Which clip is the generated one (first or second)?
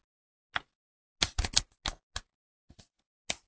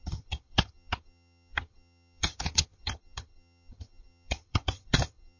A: second